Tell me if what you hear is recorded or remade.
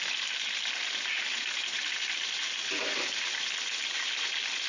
recorded